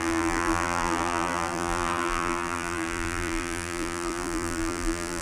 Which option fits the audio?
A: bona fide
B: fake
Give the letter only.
B